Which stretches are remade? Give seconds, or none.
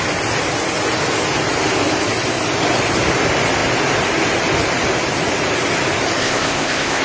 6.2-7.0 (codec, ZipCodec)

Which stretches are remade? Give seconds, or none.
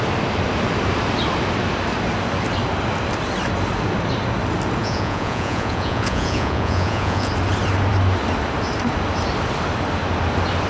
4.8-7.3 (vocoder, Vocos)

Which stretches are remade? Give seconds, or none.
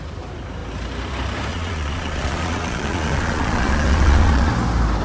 1.5-4.5 (vocoder, Vocos)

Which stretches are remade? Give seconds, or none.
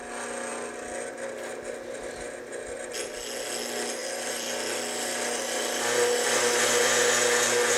4.0-4.8 (vocoder, BigVGAN v2)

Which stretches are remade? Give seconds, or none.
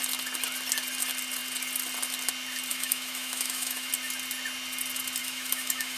2.7-3.9 (autoencoder, DAC-VAE); 5.2-6.0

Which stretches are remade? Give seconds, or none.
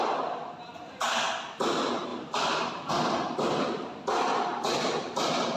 2.1-2.9 (vocoder, BigVGAN v2)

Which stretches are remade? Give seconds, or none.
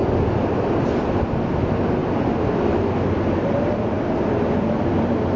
0.0-1.2 (vocoder, BigVGAN v2)